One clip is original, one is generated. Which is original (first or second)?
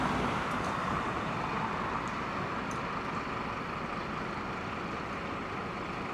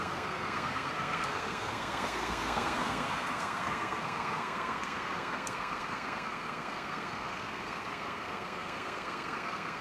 first